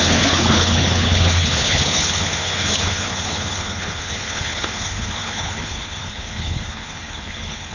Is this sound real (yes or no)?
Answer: no